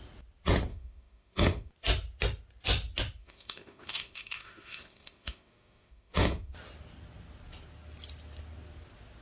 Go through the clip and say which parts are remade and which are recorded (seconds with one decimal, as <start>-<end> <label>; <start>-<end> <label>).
0.0-0.7 recorded; 0.7-1.7 remade; 1.7-3.2 recorded; 3.2-6.5 remade; 6.5-9.2 recorded